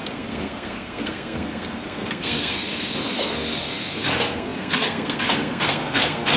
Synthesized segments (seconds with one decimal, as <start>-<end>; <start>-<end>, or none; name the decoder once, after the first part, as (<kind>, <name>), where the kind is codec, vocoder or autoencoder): 0.0-6.4 (codec, SNAC)